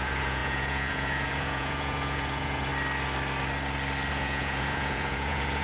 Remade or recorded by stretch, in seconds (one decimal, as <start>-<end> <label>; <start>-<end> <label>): 0.0-2.7 remade; 2.7-4.1 recorded; 4.1-5.6 remade